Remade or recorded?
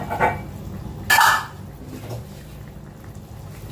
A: recorded